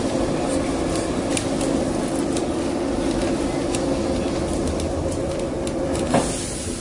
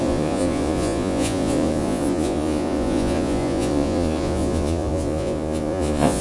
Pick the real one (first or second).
first